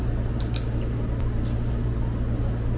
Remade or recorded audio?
recorded